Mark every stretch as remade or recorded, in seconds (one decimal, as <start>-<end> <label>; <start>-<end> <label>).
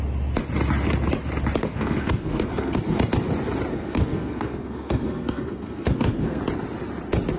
0.0-1.6 recorded; 1.6-2.8 remade; 2.8-3.7 recorded; 3.7-6.4 remade; 6.4-7.4 recorded